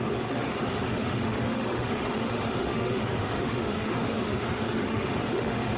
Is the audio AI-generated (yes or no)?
yes